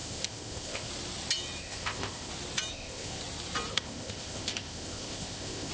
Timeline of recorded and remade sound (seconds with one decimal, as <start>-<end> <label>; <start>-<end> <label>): 0.0-0.9 remade; 0.9-1.6 recorded; 1.6-2.3 remade; 2.3-2.7 recorded; 2.7-3.2 remade; 3.2-3.7 recorded; 3.7-5.7 remade